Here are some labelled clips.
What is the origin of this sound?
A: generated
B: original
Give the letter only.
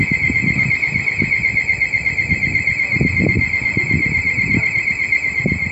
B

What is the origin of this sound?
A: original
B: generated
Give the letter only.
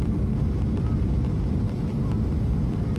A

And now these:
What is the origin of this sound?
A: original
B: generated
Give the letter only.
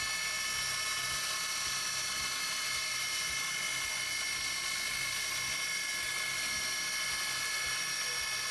A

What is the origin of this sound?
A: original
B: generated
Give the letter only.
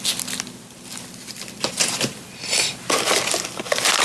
A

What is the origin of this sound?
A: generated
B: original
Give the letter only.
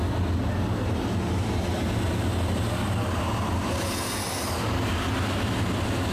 B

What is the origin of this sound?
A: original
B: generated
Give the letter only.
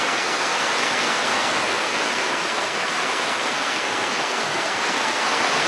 B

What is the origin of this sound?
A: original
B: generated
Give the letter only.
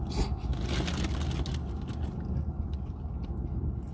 A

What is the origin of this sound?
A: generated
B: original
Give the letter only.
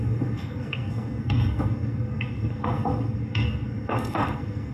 A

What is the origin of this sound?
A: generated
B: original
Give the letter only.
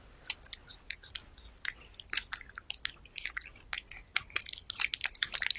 B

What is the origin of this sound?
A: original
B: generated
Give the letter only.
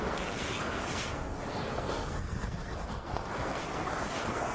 B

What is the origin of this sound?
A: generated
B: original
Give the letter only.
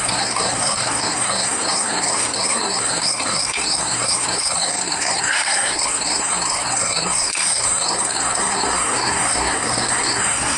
A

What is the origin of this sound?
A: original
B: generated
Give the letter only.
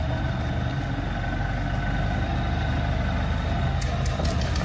A